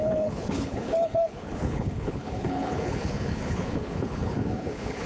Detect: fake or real fake